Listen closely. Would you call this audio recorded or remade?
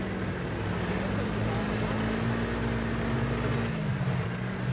recorded